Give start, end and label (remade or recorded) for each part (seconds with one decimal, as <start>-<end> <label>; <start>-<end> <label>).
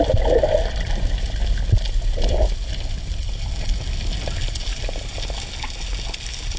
0.0-6.6 recorded